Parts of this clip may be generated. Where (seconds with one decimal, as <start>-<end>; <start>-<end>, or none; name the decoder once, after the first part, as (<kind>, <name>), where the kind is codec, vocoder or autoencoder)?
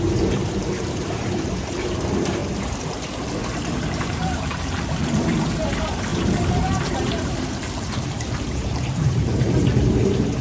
0.0-2.4 (vocoder, BigVGAN v2); 3.4-10.4